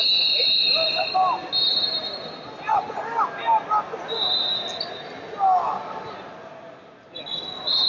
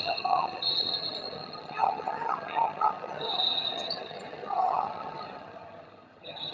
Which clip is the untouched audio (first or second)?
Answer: first